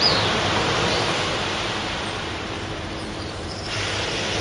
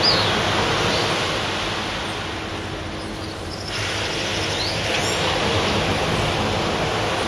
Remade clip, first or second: first